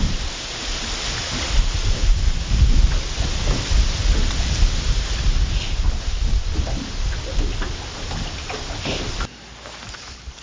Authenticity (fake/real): real